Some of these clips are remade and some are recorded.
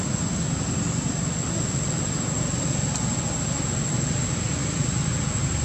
recorded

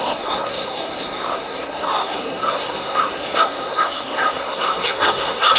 remade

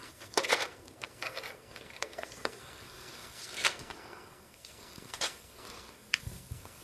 remade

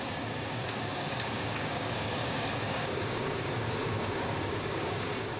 remade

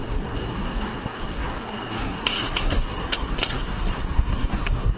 remade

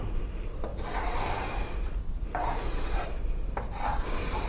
remade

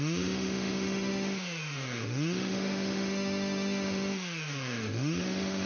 remade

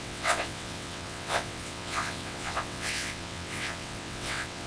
remade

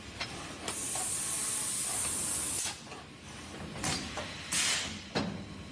recorded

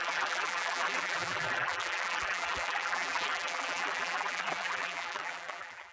remade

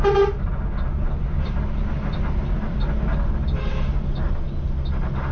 recorded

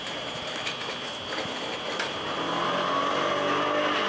recorded